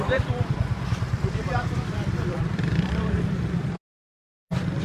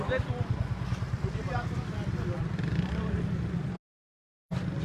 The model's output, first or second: first